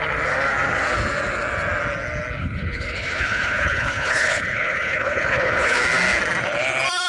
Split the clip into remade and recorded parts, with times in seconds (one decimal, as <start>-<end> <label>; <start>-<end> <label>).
0.0-2.4 recorded; 2.4-5.8 remade; 5.8-7.1 recorded